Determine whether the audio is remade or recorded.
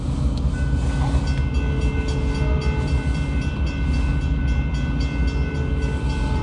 recorded